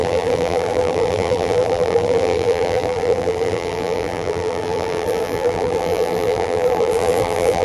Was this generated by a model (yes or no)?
yes